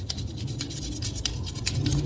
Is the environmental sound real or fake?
real